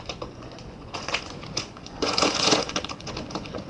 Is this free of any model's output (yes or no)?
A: no